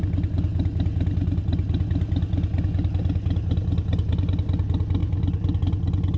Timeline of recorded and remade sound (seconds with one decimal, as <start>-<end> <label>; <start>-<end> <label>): 0.0-6.2 recorded